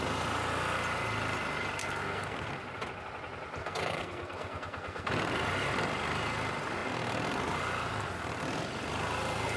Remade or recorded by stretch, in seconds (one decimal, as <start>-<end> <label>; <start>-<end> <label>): 0.0-1.8 recorded; 1.8-2.5 remade; 2.5-3.6 recorded; 3.6-5.1 remade; 5.1-9.6 recorded